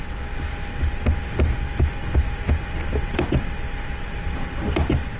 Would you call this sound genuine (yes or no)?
yes